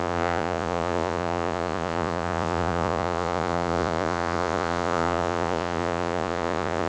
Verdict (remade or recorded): remade